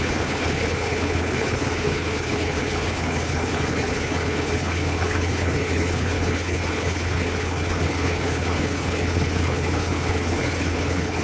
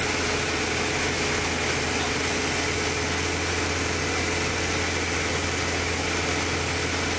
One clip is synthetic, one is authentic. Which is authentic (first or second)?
second